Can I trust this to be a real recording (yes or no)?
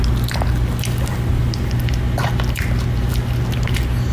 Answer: yes